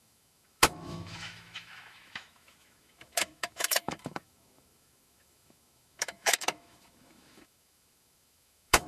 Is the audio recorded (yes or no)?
no